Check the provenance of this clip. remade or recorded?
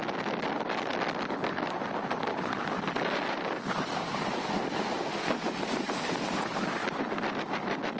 recorded